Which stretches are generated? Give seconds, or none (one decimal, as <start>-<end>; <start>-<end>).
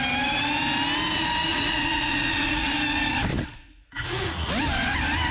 1.5-2.7; 3.3-4.5